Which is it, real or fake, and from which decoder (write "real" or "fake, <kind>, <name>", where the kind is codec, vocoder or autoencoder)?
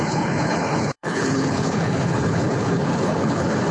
fake, codec, HILCodec